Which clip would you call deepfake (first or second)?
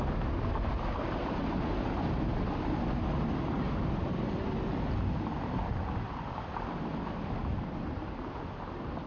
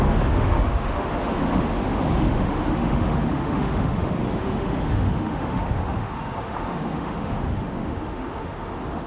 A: second